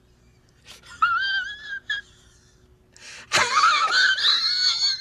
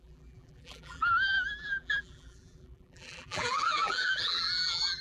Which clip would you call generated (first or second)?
second